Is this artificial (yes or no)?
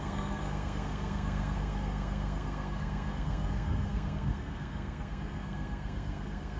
yes